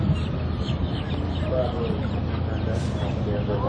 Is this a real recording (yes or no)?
yes